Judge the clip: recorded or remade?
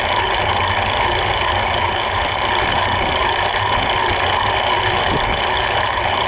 recorded